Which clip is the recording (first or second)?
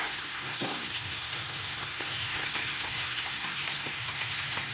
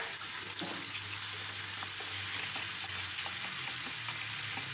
second